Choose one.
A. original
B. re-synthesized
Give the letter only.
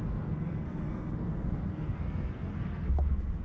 B